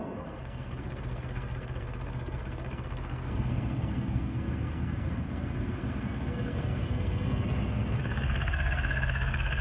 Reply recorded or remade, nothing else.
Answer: remade